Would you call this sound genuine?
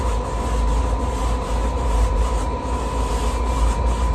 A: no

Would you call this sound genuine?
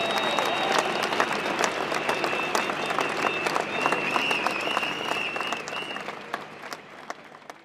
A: yes